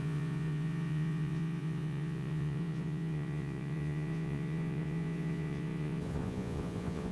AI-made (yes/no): yes